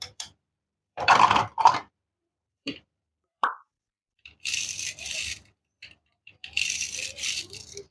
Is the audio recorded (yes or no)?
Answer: no